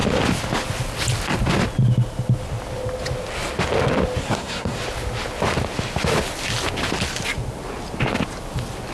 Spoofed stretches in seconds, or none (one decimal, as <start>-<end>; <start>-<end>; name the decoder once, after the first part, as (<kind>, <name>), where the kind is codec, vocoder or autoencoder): 4.2-4.8 (codec, SNAC)